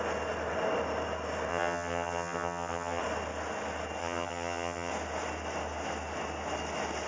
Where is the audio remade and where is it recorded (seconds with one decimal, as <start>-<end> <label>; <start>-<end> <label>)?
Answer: 0.0-1.5 recorded; 1.5-3.0 remade; 3.0-4.0 recorded; 4.0-4.9 remade; 4.9-7.1 recorded